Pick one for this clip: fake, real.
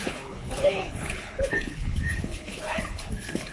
fake